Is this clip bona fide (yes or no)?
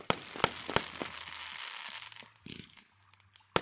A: yes